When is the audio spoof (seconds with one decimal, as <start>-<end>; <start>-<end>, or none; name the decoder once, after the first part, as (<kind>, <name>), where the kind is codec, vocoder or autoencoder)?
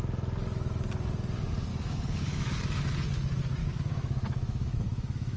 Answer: 1.7-2.8 (autoencoder, DAC-VAE); 3.6-5.4